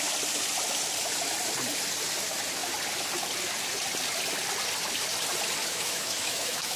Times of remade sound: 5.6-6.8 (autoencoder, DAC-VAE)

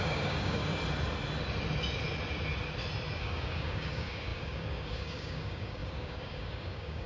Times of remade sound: 0.0-0.6 (codec, DAC); 3.2-7.1

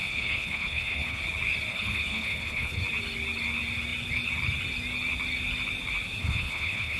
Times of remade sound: 0.0-1.2 (codec, HILCodec); 1.7-2.8; 6.2-7.0

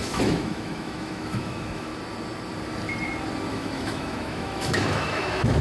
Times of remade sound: 0.0-1.9 (autoencoder, DAC-VAE); 3.5-5.6